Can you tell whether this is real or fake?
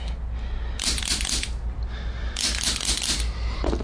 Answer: real